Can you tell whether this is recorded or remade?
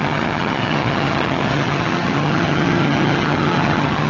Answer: remade